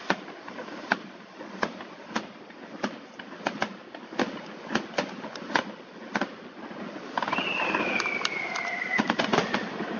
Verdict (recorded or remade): recorded